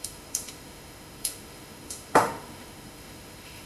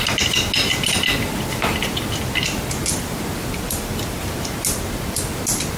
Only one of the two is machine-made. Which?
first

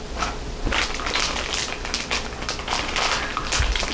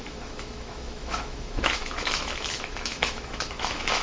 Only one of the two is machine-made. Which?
second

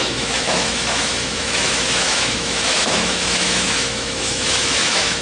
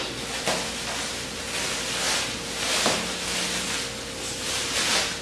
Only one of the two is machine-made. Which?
first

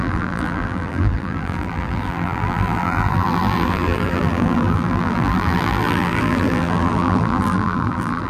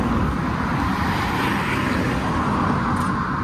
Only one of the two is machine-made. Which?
first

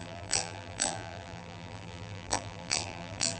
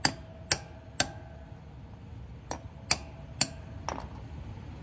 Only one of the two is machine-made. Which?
first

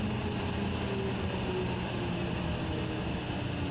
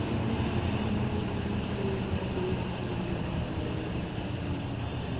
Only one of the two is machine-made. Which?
second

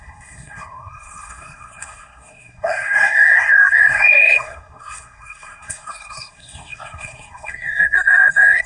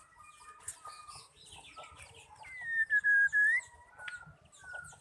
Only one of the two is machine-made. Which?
first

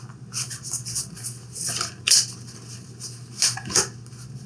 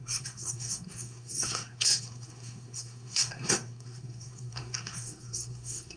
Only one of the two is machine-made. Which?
second